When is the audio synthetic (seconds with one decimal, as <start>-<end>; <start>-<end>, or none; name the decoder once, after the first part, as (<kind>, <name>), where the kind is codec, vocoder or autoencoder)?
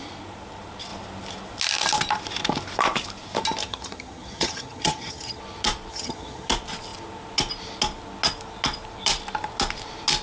3.6-5.4 (vocoder, HiFi-GAN); 5.9-6.5